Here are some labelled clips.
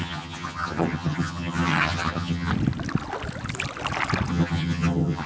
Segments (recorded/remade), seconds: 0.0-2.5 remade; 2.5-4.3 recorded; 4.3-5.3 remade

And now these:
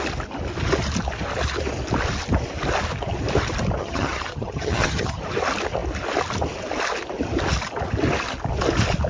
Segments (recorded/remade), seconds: 0.0-3.8 recorded; 3.8-5.2 remade; 5.2-9.1 recorded